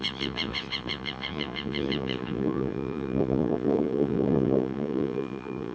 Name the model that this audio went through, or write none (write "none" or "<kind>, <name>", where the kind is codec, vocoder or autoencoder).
vocoder, Vocos